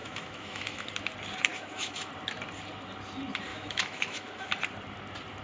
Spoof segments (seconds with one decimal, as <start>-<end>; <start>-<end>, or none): 0.0-0.9; 1.5-2.1; 3.5-4.5